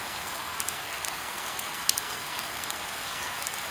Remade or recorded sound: remade